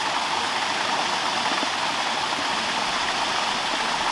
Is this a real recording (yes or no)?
yes